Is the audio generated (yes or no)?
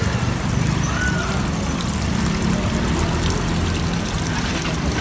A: no